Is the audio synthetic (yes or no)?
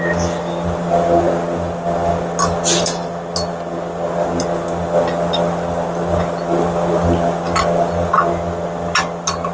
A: no